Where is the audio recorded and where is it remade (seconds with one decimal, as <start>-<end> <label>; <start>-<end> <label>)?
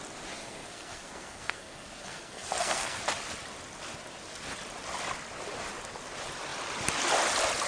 0.0-0.4 recorded; 0.4-3.0 remade; 3.0-7.7 recorded